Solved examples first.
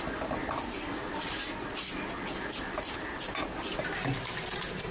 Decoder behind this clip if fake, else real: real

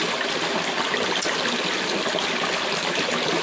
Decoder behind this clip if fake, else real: real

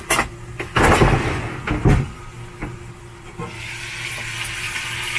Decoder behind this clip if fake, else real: real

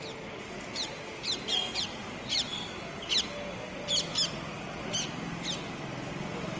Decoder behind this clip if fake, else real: real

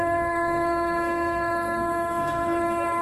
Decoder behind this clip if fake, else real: fake, codec, SNAC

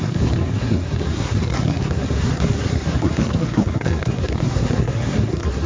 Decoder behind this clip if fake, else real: fake, codec, SNAC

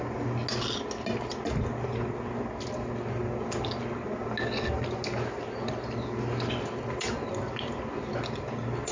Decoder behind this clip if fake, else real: real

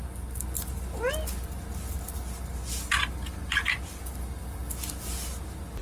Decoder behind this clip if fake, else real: real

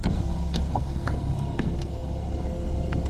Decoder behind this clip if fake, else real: fake, codec, SNAC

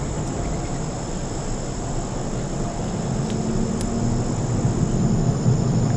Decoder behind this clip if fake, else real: real